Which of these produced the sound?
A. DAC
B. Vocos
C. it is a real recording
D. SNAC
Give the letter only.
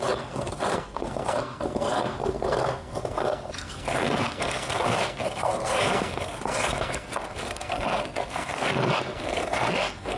D